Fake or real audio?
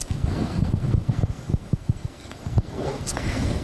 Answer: fake